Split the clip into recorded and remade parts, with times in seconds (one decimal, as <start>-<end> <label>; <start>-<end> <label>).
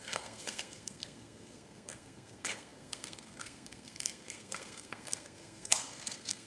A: 0.0-6.5 remade